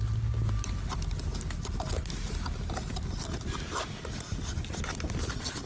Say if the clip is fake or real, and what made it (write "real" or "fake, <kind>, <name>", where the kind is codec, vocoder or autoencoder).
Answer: real